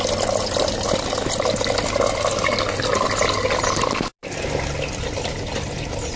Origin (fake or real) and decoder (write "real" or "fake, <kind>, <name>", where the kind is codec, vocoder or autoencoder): real